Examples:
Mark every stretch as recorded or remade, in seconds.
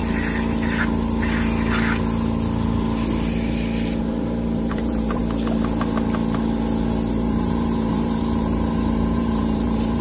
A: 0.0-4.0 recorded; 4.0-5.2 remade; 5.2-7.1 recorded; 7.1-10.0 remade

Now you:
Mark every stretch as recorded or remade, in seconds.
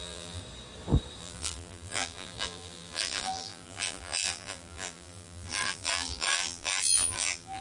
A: 0.0-0.4 remade; 0.4-1.2 recorded; 1.2-7.6 remade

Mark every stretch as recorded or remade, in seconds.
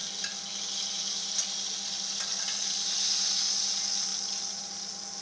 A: 0.0-5.2 recorded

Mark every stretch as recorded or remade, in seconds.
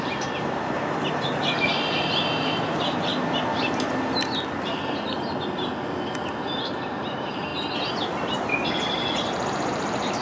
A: 0.0-3.1 remade; 3.1-6.6 recorded; 6.6-7.5 remade; 7.5-9.1 recorded; 9.1-10.2 remade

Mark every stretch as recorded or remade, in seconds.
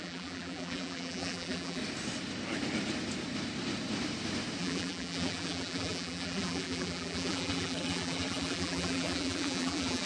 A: 0.0-1.8 remade; 1.8-4.6 recorded; 4.6-10.1 remade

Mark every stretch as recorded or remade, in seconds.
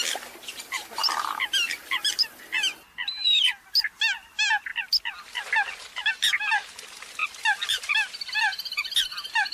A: 0.0-1.0 recorded; 1.0-2.1 remade; 2.1-7.2 recorded; 7.2-8.3 remade; 8.3-9.5 recorded